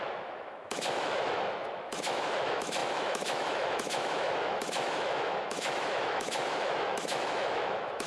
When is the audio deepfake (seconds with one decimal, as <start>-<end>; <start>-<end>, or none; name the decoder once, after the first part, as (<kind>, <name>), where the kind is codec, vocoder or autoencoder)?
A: 0.0-8.1 (autoencoder, DAC-VAE)